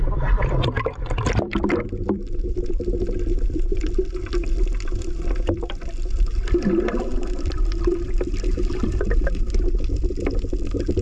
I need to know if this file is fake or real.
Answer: fake